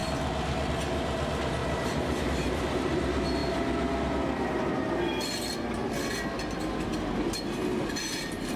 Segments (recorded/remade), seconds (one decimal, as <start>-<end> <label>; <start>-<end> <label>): 0.0-1.6 recorded; 1.6-2.8 remade; 2.8-8.6 recorded